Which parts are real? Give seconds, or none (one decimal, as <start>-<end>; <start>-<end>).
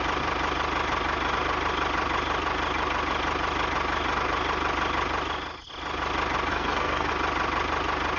0.0-6.5; 7.1-8.2